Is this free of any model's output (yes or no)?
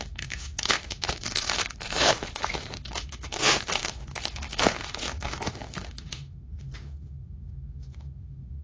no